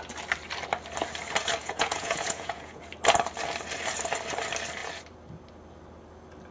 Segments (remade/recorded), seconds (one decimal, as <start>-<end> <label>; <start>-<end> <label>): 0.0-1.6 recorded; 1.6-2.8 remade; 2.8-6.5 recorded